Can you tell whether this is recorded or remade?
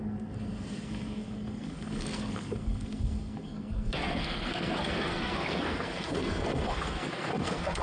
remade